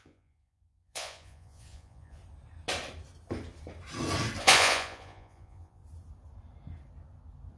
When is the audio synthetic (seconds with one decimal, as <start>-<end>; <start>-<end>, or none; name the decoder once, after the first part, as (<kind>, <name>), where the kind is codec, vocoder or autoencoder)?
0.0-2.2 (vocoder, Vocos); 4.4-5.8